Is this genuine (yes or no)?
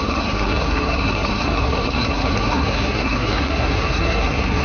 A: no